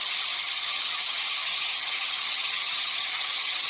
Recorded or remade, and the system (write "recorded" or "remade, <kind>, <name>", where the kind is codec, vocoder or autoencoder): remade, vocoder, HiFi-GAN